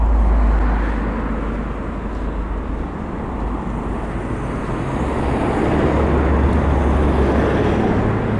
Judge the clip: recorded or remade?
recorded